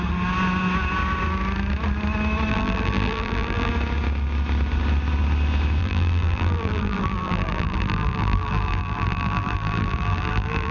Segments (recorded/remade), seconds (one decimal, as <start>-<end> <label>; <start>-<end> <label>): 0.0-2.5 recorded; 2.5-3.7 remade; 3.7-5.8 recorded; 5.8-10.7 remade